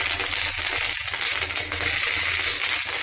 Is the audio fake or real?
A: real